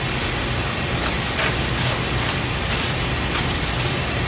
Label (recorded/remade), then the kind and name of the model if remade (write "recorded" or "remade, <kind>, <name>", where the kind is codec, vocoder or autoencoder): recorded